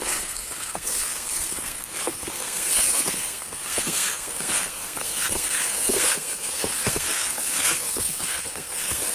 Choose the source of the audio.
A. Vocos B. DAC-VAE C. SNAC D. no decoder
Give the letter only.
C